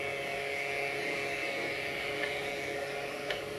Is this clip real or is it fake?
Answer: fake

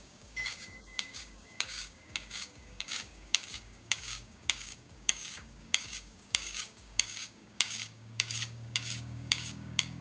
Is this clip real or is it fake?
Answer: fake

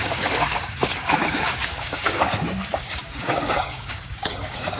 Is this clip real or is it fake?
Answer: fake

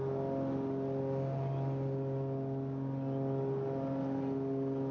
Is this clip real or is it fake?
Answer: real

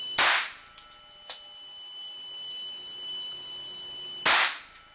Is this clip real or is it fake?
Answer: real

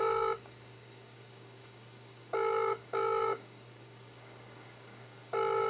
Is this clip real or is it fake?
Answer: fake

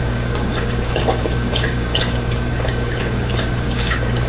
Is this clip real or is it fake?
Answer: fake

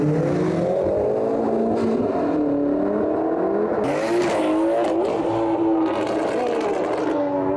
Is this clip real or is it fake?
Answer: real